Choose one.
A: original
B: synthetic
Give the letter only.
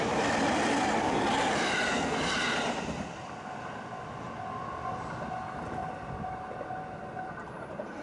A